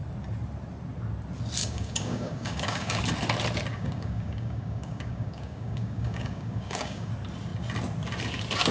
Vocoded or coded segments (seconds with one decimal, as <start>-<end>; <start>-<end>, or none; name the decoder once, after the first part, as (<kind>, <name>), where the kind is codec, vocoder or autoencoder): 1.6-3.0 (codec, DAC); 3.7-7.1